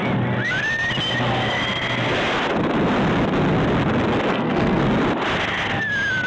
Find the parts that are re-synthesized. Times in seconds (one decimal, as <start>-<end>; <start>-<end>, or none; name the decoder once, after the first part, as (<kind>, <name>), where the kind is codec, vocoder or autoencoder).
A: 4.3-4.8 (codec, SNAC)